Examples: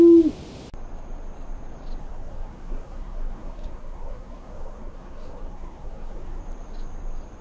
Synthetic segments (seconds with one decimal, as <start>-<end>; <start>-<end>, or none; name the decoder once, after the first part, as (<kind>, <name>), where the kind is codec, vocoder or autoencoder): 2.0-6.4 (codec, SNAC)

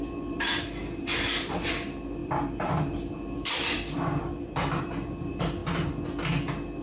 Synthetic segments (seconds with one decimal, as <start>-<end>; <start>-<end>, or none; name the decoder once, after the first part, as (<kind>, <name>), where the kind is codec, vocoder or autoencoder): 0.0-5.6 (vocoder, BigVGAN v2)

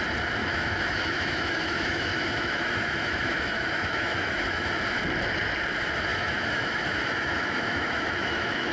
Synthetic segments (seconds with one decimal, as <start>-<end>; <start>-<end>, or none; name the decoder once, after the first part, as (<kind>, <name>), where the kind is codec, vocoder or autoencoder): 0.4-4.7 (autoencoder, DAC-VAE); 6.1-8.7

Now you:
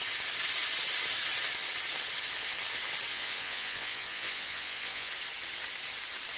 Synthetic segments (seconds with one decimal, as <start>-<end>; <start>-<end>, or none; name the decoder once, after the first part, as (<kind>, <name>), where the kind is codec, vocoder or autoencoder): 3.1-5.1 (vocoder, Vocos)